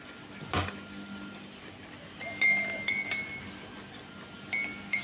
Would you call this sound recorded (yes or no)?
yes